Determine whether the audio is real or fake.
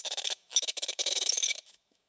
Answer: fake